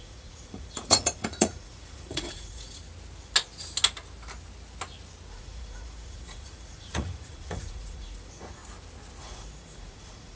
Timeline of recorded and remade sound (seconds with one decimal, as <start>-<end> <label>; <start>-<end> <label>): 0.0-2.8 remade; 2.8-5.3 recorded; 5.3-8.6 remade; 8.6-9.2 recorded; 9.2-10.4 remade